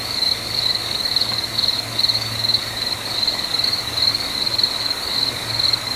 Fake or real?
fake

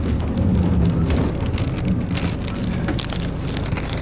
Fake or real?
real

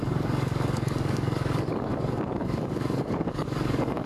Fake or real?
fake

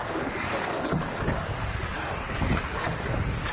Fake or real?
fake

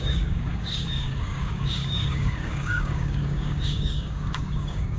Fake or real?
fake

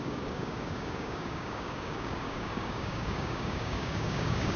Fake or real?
fake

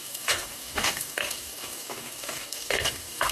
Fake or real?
fake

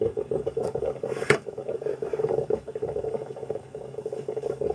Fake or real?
fake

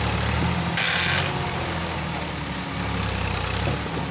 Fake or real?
real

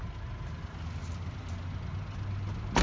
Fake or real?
real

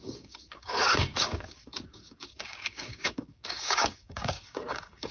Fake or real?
fake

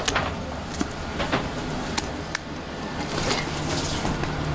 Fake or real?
real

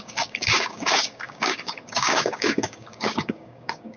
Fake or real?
fake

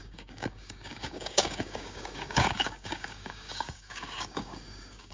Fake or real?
fake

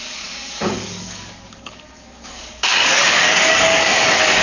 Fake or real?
fake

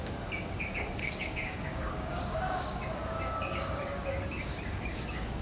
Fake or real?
fake